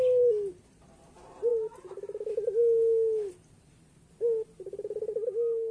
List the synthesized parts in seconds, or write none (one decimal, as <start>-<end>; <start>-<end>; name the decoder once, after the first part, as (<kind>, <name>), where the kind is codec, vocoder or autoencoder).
none